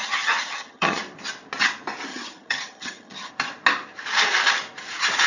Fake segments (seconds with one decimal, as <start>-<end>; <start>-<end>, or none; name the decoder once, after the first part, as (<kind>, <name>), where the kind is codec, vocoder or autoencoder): 0.0-1.0 (vocoder, HiFi-GAN); 2.1-3.3